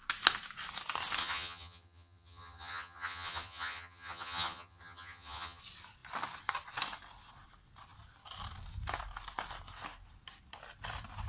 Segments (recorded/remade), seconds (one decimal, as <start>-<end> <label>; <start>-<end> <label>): 0.0-1.2 recorded; 1.2-5.6 remade; 5.6-11.3 recorded